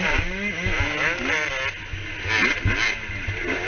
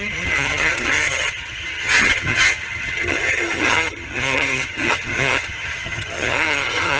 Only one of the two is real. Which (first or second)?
first